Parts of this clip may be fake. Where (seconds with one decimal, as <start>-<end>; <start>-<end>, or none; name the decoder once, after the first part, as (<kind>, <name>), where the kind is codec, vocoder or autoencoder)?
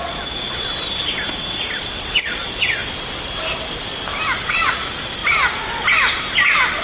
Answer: 0.0-0.7 (vocoder, Vocos); 1.8-2.8; 4.4-5.2